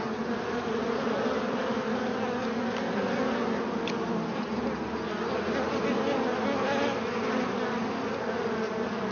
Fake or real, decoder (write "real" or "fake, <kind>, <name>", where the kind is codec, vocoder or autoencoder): real